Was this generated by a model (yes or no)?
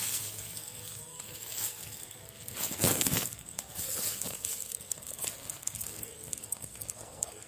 yes